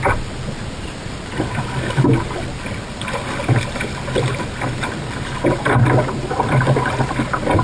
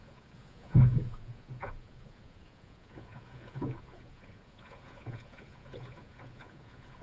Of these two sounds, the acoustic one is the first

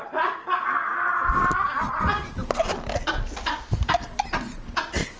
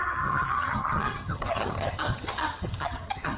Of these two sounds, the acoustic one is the first